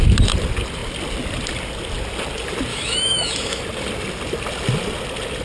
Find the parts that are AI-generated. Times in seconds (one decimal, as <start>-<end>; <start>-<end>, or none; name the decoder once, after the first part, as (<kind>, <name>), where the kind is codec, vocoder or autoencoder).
2.7-3.6 (autoencoder, DAC-VAE)